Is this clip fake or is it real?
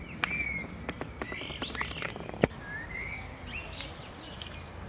real